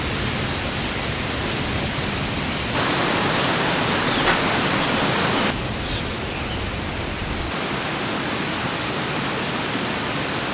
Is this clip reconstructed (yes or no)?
no